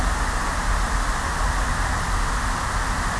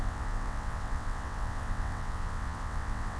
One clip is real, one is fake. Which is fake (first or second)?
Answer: second